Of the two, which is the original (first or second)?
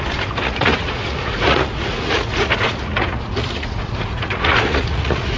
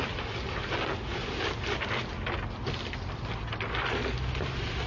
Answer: second